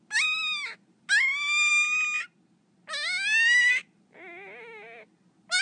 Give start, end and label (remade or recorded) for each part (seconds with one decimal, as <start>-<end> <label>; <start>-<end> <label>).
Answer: 0.0-5.6 recorded